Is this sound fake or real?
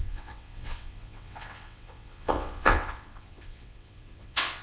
fake